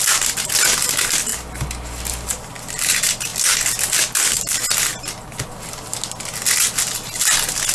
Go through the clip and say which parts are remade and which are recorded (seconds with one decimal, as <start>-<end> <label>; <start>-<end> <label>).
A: 0.0-1.3 recorded; 1.3-2.0 remade; 2.0-4.9 recorded; 4.9-5.5 remade; 5.5-7.7 recorded